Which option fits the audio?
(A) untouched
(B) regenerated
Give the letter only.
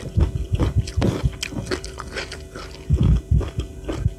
A